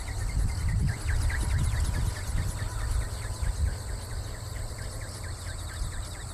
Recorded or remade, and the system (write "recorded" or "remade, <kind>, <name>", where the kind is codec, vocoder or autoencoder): recorded